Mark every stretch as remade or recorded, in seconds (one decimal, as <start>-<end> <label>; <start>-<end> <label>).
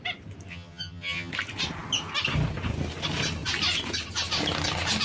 0.0-0.5 recorded; 0.5-1.3 remade; 1.3-5.0 recorded